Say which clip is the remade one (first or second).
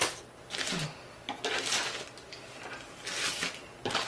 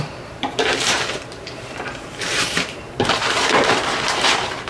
second